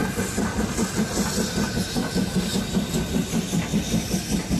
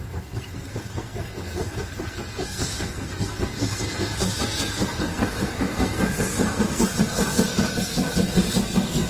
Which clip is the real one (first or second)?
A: first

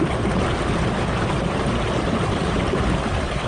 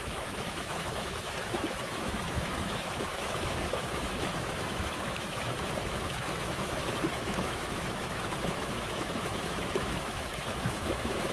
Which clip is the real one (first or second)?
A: first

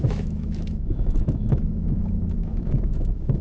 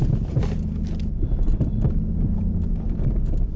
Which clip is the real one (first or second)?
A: second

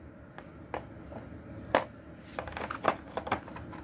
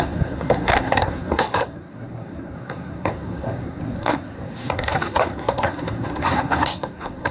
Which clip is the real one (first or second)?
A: first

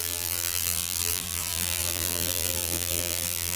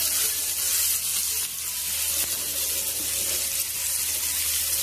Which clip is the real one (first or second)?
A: second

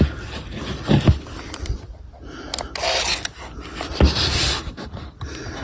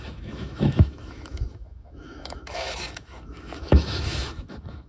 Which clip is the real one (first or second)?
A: first